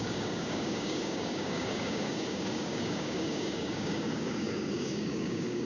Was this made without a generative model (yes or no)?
no